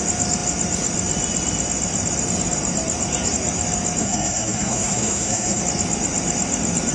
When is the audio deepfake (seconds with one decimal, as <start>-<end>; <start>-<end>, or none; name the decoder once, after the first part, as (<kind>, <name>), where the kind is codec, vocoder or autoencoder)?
4.0-5.6 (codec, SNAC)

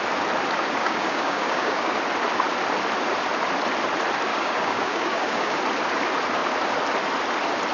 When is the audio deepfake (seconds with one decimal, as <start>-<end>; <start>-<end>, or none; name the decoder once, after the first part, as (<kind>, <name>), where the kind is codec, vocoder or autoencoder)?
0.8-2.0 (codec, DAC); 4.3-5.6

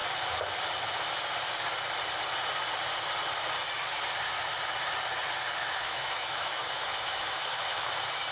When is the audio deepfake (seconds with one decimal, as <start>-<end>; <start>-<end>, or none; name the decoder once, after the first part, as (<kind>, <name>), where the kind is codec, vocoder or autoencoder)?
5.6-7.9 (autoencoder, DAC-VAE)

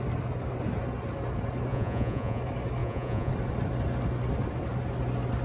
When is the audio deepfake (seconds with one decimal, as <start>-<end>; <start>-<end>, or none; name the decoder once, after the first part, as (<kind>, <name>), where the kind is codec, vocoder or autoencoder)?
1.7-2.4 (vocoder, Vocos); 2.8-3.3

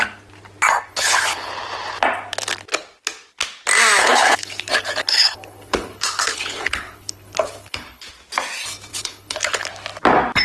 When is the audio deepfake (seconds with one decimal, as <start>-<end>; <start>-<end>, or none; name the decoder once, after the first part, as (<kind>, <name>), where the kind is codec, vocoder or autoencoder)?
0.9-1.5 (codec, HILCodec); 4.0-8.1; 8.9-9.7

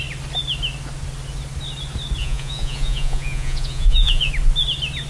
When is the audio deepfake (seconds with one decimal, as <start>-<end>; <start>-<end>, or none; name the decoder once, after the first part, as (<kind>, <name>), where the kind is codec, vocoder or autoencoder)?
2.2-4.3 (vocoder, Vocos)